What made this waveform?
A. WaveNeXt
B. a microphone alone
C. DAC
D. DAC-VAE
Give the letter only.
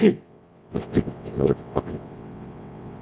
A